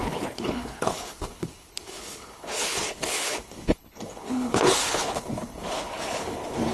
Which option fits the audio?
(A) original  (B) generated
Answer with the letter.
B